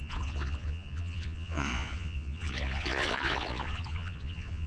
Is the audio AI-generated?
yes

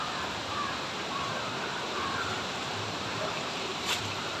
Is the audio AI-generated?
yes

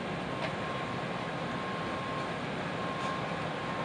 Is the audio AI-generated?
no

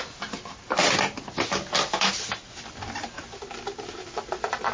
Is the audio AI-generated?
no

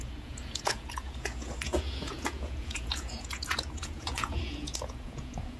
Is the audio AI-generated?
yes